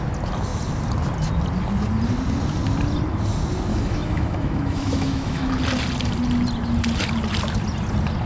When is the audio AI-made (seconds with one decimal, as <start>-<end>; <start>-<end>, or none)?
3.7-5.6